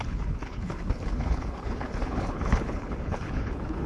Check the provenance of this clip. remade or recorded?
remade